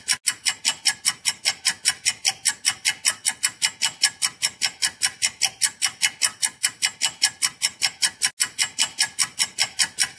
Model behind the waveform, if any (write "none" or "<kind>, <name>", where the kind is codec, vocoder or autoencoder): none